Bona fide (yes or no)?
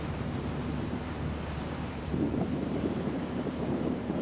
no